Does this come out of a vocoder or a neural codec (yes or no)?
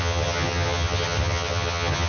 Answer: yes